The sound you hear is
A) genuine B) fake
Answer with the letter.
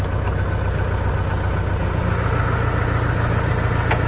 A